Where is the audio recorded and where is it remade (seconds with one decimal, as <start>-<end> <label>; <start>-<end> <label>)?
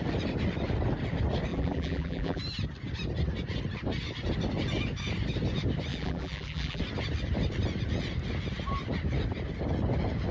0.0-1.5 recorded; 1.5-2.4 remade; 2.4-5.9 recorded; 5.9-6.8 remade; 6.8-10.3 recorded